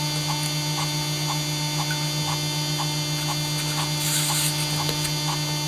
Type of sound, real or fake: real